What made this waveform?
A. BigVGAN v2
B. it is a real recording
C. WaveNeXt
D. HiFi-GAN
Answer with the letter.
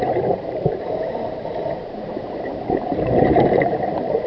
A